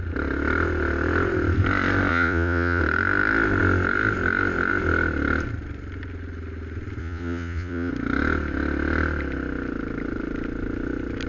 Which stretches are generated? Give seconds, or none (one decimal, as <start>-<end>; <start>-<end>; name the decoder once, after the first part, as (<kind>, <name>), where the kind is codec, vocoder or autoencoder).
2.1-2.8 (vocoder, Vocos); 7.0-7.9